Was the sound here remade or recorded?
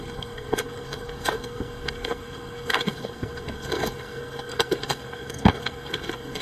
remade